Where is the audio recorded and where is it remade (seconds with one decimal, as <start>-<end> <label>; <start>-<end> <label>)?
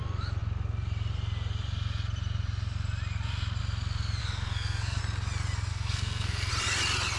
0.0-4.2 recorded; 4.2-5.0 remade; 5.0-5.7 recorded; 5.7-6.5 remade; 6.5-7.2 recorded